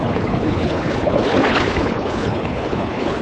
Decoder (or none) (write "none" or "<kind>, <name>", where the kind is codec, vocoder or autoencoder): codec, HILCodec